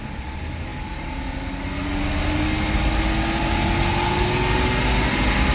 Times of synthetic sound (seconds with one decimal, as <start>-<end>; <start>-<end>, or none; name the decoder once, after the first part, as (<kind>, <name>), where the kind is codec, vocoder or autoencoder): none